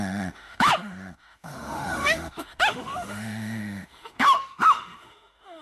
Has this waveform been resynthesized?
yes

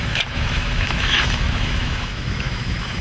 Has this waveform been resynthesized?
yes